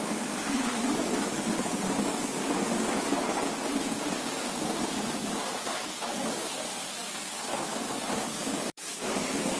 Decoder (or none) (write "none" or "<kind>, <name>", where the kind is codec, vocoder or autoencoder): codec, DAC